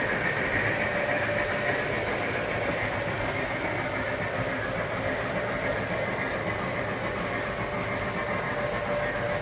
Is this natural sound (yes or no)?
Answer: yes